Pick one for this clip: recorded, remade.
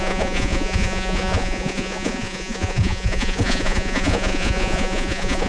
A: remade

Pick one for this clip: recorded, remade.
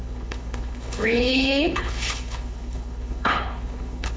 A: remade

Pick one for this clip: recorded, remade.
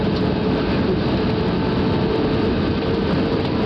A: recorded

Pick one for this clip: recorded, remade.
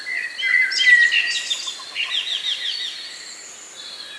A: recorded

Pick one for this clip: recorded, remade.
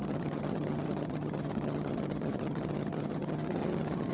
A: remade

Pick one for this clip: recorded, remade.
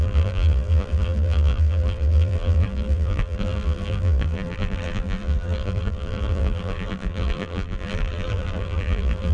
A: remade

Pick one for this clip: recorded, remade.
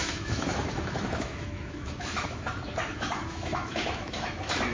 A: remade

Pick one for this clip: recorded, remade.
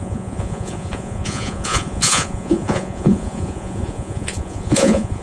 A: remade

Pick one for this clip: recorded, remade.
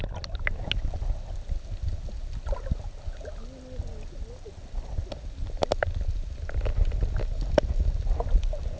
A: recorded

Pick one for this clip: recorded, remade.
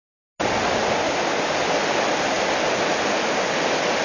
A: recorded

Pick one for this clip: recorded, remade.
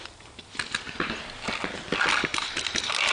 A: recorded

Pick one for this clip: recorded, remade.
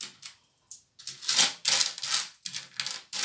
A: recorded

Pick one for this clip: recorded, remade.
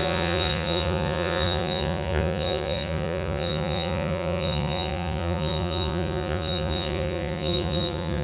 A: remade